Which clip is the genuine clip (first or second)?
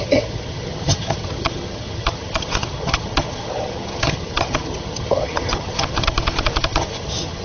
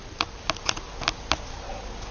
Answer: second